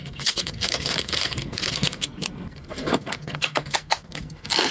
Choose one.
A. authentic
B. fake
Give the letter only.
B